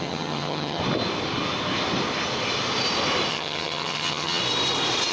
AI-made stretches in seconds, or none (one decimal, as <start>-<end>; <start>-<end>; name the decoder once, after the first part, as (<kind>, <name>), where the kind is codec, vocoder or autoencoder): 0.0-0.8 (vocoder, HiFi-GAN); 3.3-4.4